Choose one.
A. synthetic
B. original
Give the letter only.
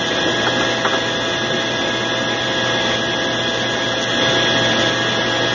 B